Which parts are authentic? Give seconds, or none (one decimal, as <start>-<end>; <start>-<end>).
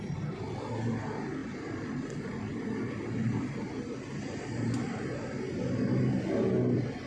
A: 0.0-1.4; 5.5-7.1